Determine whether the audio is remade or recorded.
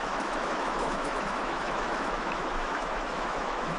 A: remade